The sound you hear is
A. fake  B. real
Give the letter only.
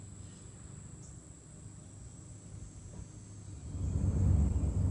B